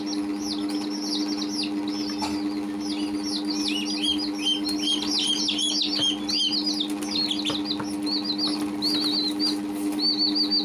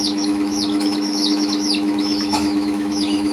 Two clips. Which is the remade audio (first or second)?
second